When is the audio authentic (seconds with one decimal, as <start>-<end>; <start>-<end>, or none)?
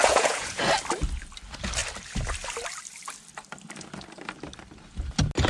0.7-5.5